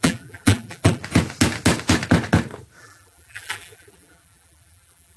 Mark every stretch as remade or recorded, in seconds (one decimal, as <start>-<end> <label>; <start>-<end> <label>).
0.0-1.0 remade; 1.0-2.8 recorded; 2.8-5.2 remade